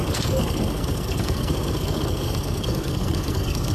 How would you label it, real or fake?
fake